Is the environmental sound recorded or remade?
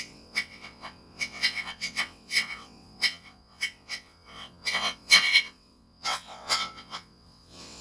remade